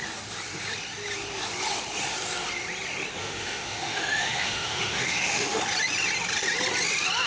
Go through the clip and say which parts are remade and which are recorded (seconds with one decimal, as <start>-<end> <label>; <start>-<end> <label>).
0.0-3.2 recorded; 3.2-5.6 remade; 5.6-7.3 recorded